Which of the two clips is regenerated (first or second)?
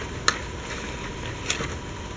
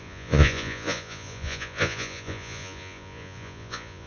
second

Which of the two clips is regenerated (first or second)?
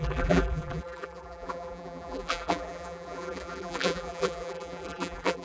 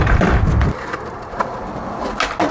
first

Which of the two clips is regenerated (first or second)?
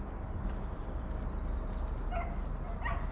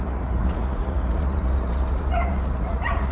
second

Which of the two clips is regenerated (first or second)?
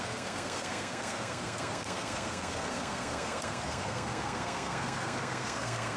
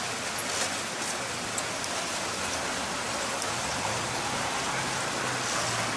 first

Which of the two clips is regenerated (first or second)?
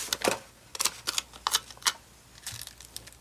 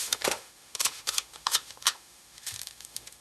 second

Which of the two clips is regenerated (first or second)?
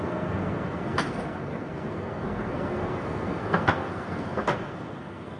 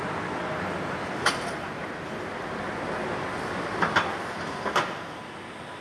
first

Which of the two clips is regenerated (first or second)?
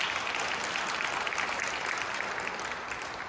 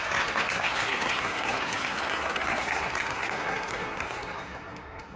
second